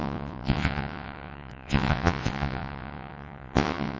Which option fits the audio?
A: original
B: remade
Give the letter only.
B